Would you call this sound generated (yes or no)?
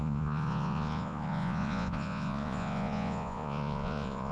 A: yes